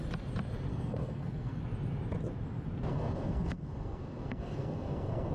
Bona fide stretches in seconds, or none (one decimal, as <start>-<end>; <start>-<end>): 0.0-0.7; 1.6-2.9